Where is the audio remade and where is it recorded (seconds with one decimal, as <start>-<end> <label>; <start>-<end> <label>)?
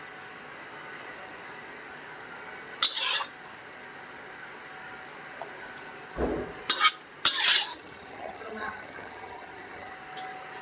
0.0-7.7 recorded; 7.7-9.9 remade; 9.9-10.6 recorded